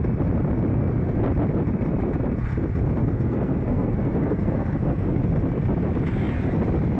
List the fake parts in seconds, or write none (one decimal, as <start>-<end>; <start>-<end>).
0.7-1.2; 3.0-5.2